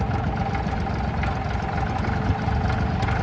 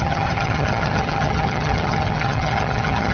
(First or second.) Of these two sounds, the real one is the first